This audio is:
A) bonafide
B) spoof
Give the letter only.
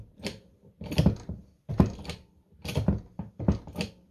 A